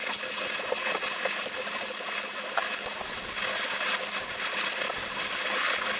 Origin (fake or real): real